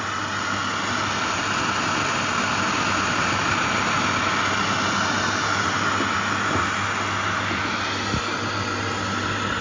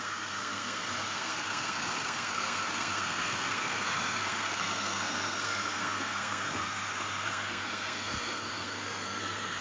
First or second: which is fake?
second